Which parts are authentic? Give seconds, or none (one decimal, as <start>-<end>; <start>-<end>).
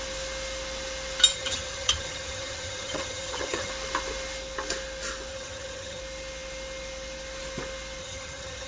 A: 0.0-1.3; 3.7-5.3; 6.0-8.0